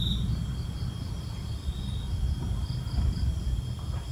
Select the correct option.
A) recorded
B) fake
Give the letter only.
A